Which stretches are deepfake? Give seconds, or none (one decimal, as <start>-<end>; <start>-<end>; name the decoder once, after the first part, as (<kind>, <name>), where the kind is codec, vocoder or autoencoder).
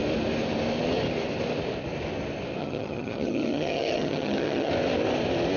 2.6-4.7 (vocoder, HiFi-GAN)